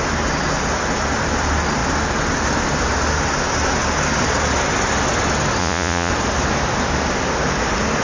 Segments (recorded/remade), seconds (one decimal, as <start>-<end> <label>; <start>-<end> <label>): 0.0-5.6 recorded; 5.6-6.1 remade; 6.1-8.0 recorded